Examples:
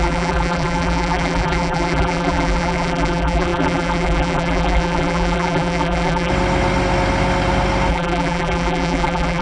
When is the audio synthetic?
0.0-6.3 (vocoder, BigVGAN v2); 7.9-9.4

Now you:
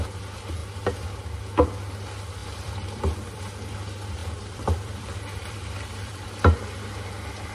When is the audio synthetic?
2.4-3.4 (vocoder, BigVGAN v2); 4.2-6.4

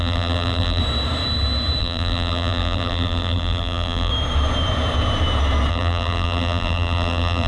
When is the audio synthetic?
0.0-0.8 (vocoder, BigVGAN v2); 1.8-4.1; 5.7-7.5

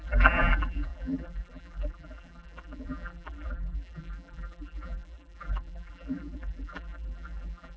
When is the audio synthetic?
0.0-7.8 (vocoder, BigVGAN v2)

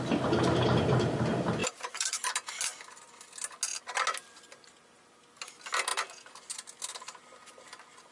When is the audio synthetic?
1.6-2.3 (vocoder, BigVGAN v2)

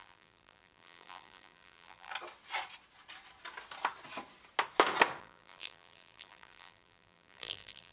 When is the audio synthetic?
0.0-2.1 (vocoder, BigVGAN v2); 5.2-7.9

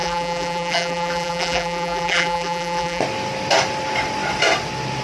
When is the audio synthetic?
0.0-3.0 (vocoder, BigVGAN v2)